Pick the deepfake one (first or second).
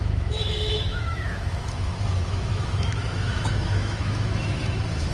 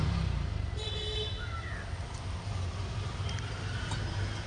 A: first